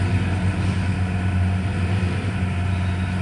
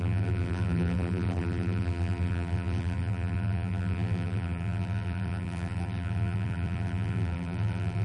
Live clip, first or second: first